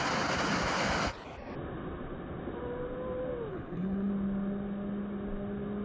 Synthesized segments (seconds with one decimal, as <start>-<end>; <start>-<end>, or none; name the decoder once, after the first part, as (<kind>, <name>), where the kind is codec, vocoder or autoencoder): 3.5-4.1 (codec, HILCodec)